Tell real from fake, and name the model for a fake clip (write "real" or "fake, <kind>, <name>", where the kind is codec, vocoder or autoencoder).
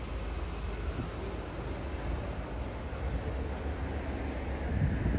real